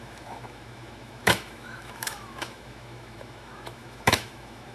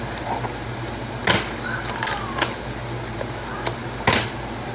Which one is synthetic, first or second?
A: first